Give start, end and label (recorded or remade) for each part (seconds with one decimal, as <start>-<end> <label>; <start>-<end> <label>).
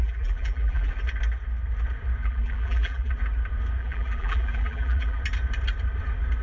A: 0.0-0.9 remade; 0.9-2.2 recorded; 2.2-3.1 remade; 3.1-3.8 recorded; 3.8-5.2 remade; 5.2-6.4 recorded